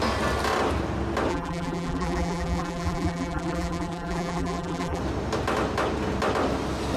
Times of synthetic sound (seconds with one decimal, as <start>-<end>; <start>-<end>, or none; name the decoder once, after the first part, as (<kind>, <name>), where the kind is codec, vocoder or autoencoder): 1.3-5.0 (vocoder, BigVGAN v2)